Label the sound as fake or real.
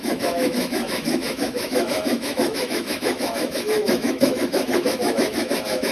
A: fake